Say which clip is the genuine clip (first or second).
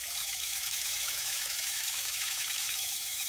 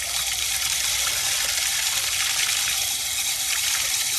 second